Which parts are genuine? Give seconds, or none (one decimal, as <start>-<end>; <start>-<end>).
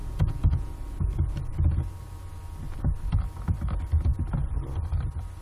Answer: 0.7-5.4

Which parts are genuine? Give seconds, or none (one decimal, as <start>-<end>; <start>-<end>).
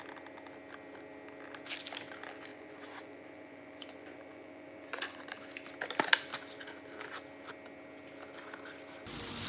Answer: 0.0-2.5; 5.3-9.5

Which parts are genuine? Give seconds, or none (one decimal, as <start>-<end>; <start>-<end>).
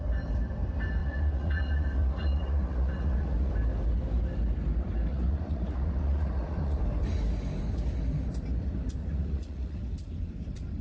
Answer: 0.0-1.0; 3.5-5.1; 6.8-9.0; 9.8-10.8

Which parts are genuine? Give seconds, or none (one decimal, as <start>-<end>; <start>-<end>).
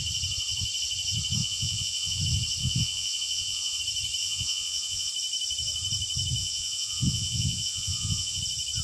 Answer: 0.0-1.4; 2.2-2.6; 3.8-4.2; 5.1-6.4; 8.4-8.8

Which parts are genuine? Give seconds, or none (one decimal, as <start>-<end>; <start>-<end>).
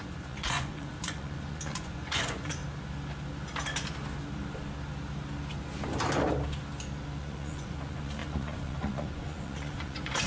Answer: 2.6-7.2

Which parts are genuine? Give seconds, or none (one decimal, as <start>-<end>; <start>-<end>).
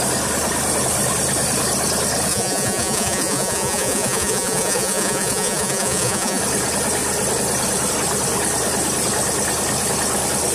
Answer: 0.0-2.3; 6.4-10.5